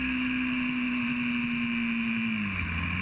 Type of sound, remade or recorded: recorded